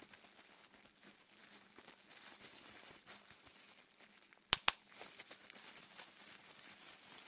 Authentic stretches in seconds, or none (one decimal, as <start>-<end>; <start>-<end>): 0.0-1.4; 3.5-5.4; 6.4-7.3